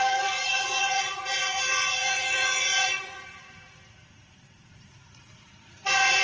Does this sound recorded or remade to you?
remade